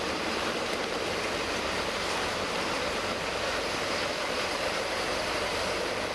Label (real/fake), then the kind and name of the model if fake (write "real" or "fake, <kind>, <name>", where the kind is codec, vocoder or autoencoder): fake, vocoder, BigVGAN v2